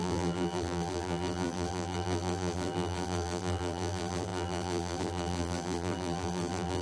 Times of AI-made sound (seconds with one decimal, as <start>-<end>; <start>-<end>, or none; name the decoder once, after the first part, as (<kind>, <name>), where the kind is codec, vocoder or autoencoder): 0.0-6.8 (vocoder, BigVGAN v2)